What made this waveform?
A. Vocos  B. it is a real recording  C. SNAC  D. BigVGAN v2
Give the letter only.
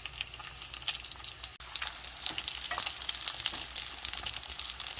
B